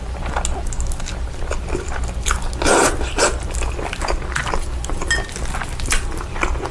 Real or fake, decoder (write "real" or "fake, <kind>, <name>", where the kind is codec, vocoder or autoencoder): real